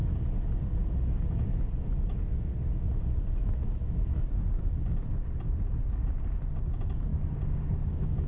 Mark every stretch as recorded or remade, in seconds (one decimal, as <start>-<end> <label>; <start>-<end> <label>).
0.0-8.3 recorded